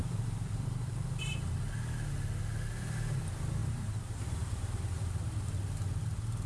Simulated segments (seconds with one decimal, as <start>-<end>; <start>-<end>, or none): 0.0-1.5; 3.6-5.1